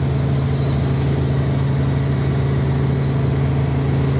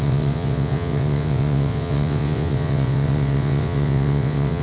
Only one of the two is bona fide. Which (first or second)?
first